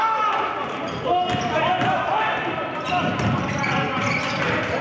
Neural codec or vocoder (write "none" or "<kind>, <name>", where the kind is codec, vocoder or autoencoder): none